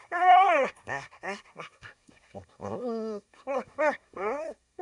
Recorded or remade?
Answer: remade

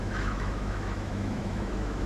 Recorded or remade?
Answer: remade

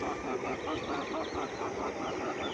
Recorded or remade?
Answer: recorded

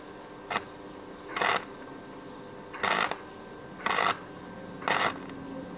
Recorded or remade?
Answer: recorded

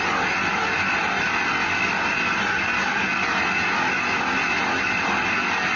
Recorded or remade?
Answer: recorded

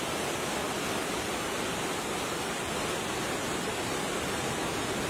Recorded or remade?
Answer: recorded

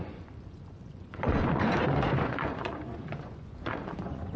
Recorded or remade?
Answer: remade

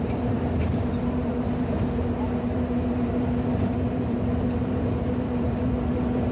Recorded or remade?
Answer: remade